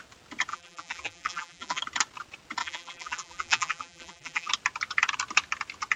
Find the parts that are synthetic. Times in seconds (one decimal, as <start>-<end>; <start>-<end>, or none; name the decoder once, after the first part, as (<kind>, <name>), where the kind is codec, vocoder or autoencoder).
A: 0.5-1.8 (vocoder, BigVGAN v2); 2.6-4.5